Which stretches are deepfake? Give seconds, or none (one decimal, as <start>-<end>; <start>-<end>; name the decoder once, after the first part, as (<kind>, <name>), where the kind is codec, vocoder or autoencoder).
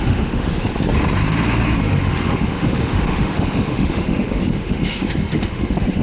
0.0-0.7 (autoencoder, DAC-VAE); 1.8-6.0